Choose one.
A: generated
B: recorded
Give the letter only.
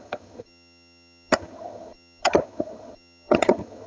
A